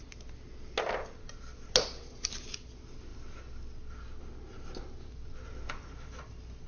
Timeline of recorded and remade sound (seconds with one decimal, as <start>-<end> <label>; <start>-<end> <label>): 0.0-6.7 recorded